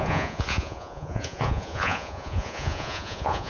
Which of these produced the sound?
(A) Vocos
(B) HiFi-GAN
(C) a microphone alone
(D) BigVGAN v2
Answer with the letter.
A